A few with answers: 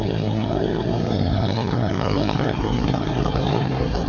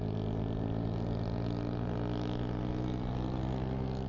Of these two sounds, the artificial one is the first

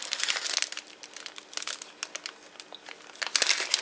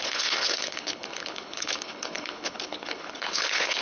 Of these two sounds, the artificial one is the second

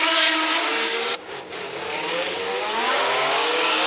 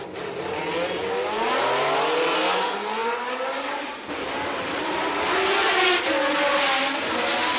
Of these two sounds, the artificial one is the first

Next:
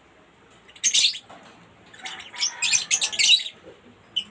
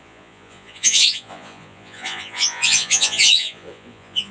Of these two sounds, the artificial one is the second